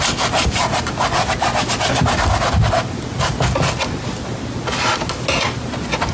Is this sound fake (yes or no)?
no